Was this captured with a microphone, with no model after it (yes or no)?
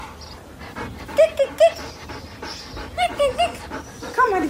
yes